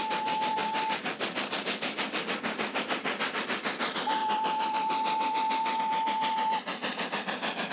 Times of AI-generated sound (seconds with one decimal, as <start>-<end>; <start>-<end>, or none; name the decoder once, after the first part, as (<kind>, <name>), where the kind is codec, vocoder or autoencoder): 0.0-0.6 (vocoder, BigVGAN v2); 3.3-6.8